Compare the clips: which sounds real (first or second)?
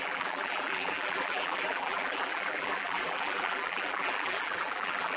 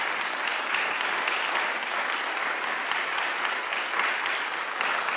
second